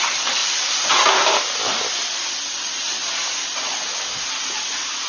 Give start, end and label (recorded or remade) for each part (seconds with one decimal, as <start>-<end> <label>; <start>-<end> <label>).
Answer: 0.0-0.4 remade; 0.4-3.1 recorded; 3.1-3.7 remade; 3.7-4.2 recorded; 4.2-5.1 remade